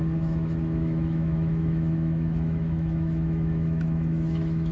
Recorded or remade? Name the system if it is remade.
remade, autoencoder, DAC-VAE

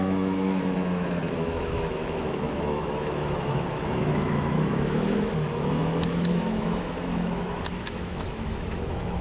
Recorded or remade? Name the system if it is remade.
remade, autoencoder, DAC-VAE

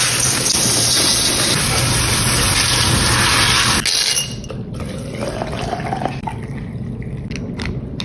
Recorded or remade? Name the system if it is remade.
recorded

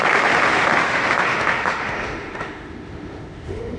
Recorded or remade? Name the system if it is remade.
remade, autoencoder, DAC-VAE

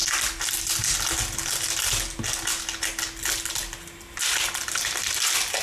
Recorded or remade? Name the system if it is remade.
recorded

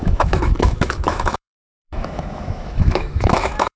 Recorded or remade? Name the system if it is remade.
remade, autoencoder, DAC-VAE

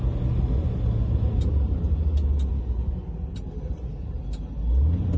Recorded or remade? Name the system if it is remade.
recorded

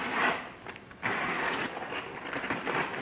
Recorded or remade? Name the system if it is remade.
recorded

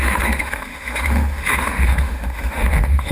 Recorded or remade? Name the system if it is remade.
remade, autoencoder, DAC-VAE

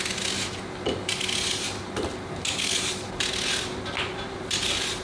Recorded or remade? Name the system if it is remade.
recorded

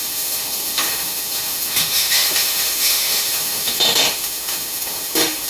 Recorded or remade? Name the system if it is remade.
remade, autoencoder, DAC-VAE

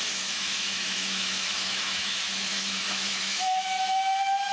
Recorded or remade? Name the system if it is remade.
remade, autoencoder, DAC-VAE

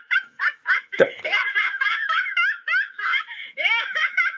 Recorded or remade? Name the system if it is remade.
remade, autoencoder, DAC-VAE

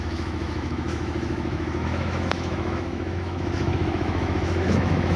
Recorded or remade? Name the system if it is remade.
remade, autoencoder, DAC-VAE